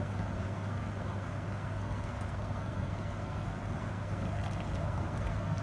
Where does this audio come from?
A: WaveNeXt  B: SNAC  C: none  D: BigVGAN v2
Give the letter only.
B